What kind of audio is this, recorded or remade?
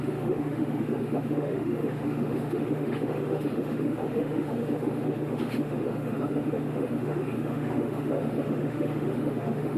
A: remade